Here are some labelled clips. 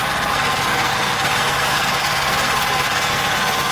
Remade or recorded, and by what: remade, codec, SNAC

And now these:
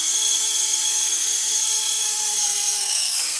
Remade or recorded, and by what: remade, codec, SNAC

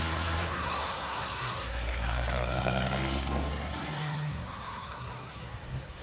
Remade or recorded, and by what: remade, codec, SNAC